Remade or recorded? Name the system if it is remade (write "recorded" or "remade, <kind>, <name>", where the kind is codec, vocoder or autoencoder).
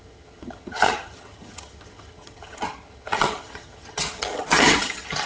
remade, vocoder, HiFi-GAN